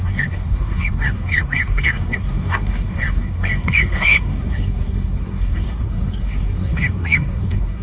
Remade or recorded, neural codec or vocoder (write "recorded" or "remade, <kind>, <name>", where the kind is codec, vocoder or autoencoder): remade, codec, SNAC